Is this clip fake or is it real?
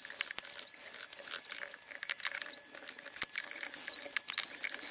real